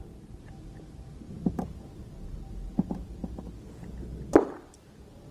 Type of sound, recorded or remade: recorded